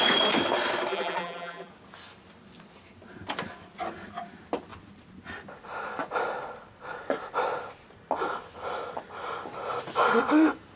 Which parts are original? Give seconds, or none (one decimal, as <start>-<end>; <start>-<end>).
0.0-0.9; 1.7-10.8